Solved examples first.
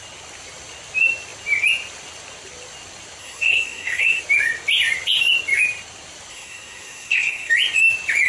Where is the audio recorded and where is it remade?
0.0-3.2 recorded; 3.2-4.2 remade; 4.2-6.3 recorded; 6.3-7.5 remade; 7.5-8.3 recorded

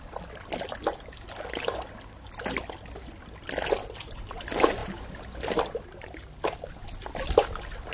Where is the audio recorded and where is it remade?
0.0-7.9 recorded

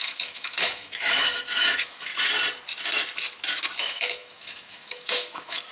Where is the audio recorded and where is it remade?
0.0-2.1 remade; 2.1-3.8 recorded; 3.8-5.7 remade

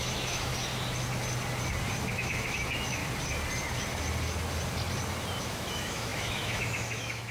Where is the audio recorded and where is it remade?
0.0-0.5 remade; 0.5-2.1 recorded; 2.1-3.0 remade; 3.0-5.4 recorded; 5.4-7.3 remade

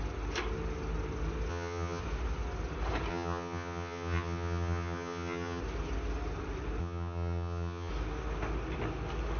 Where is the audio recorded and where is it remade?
0.0-1.5 recorded; 1.5-2.0 remade; 2.0-3.1 recorded; 3.1-5.6 remade; 5.6-6.8 recorded; 6.8-7.9 remade; 7.9-9.4 recorded